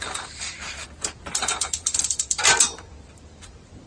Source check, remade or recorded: remade